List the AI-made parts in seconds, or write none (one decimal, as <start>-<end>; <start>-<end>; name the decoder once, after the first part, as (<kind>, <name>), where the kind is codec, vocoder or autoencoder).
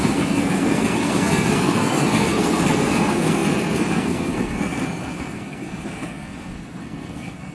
0.0-7.5 (codec, SNAC)